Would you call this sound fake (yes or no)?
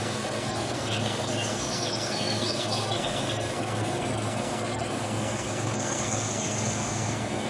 yes